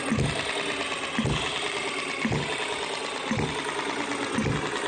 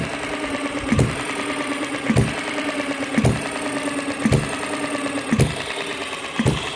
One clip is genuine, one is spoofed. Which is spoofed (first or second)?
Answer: second